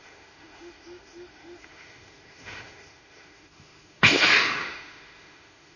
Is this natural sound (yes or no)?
no